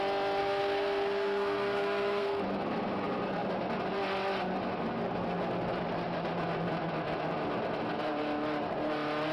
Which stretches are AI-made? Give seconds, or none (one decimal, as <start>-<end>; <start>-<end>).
0.4-2.4